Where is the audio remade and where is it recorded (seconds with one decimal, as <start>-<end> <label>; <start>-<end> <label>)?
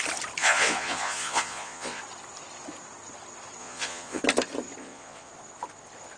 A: 0.0-0.4 recorded; 0.4-2.0 remade; 2.0-3.6 recorded; 3.6-4.2 remade; 4.2-4.8 recorded; 4.8-5.3 remade; 5.3-6.2 recorded